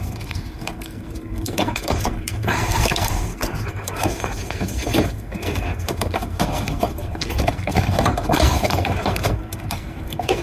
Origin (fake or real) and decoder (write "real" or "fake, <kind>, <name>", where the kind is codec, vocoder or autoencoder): fake, codec, SNAC